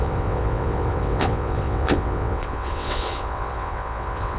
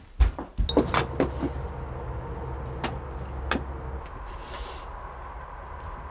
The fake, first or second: first